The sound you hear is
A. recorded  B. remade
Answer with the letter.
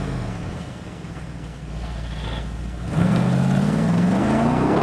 B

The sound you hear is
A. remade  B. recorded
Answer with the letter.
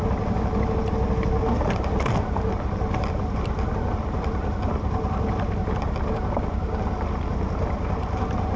B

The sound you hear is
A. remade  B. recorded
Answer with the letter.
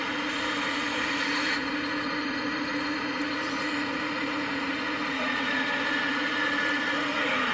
A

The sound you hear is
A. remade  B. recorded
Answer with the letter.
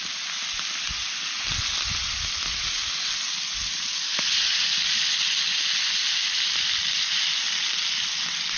B